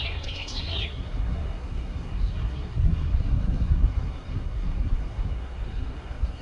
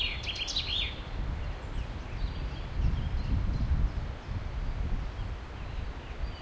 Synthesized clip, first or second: first